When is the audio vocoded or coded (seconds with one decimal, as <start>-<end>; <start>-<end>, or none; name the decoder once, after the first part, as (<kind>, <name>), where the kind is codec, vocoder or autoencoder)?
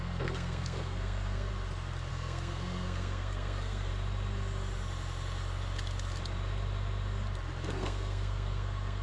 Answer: 0.0-1.5 (codec, SNAC); 2.1-3.9; 7.7-9.0